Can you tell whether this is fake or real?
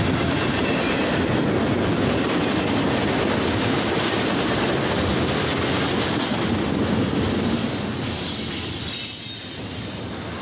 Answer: real